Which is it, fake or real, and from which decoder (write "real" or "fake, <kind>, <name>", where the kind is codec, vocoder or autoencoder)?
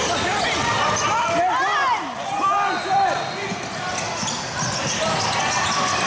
real